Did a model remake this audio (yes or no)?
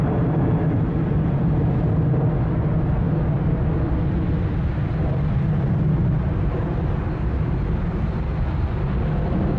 no